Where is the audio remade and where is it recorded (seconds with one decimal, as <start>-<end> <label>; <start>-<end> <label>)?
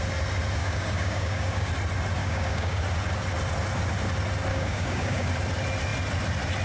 0.0-0.6 recorded; 0.6-1.7 remade; 1.7-2.2 recorded; 2.2-2.8 remade; 2.8-4.5 recorded; 4.5-5.3 remade; 5.3-6.6 recorded